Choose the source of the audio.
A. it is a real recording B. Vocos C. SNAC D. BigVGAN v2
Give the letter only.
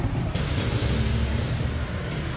A